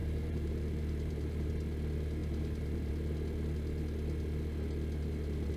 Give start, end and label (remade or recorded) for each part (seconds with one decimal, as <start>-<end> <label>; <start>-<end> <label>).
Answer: 0.0-1.5 remade; 1.5-2.2 recorded; 2.2-2.9 remade; 2.9-5.6 recorded